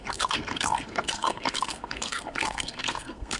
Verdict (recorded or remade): remade